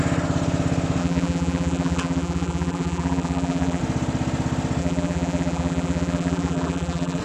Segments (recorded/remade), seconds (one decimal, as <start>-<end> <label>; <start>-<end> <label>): 0.0-1.0 recorded; 1.0-3.8 remade; 3.8-4.8 recorded; 4.8-7.2 remade